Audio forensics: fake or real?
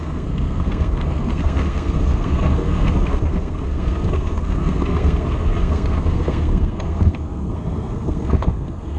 fake